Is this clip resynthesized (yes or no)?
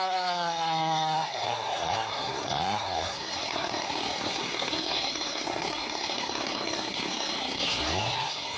yes